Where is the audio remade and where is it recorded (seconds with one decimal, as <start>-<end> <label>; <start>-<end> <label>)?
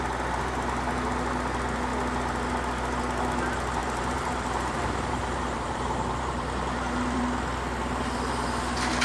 0.0-3.8 recorded; 3.8-7.2 remade; 7.2-9.0 recorded